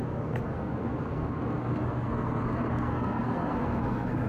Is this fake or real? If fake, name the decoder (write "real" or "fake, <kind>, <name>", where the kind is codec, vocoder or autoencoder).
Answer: fake, codec, SNAC